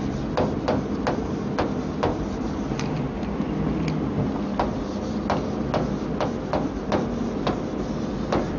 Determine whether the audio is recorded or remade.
recorded